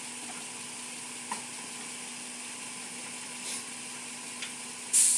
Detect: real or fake real